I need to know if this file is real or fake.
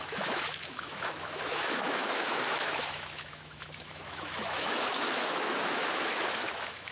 fake